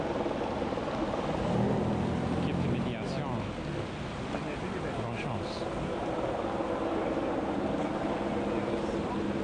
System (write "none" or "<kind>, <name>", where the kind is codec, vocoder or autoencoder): none